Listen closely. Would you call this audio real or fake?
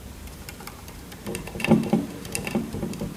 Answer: fake